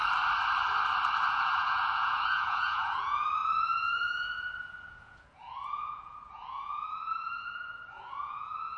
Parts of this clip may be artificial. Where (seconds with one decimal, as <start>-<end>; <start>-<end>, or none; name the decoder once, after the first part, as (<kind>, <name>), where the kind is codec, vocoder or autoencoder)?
1.3-8.8 (vocoder, Vocos)